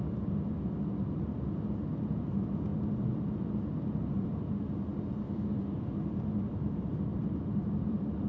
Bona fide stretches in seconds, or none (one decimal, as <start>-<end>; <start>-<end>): 0.0-7.1